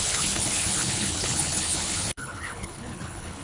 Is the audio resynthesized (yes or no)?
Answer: yes